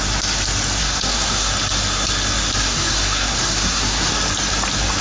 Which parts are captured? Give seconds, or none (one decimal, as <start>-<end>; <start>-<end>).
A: 0.0-0.8; 1.5-2.6; 4.1-5.0